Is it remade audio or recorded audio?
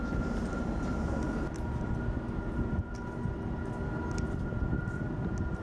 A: recorded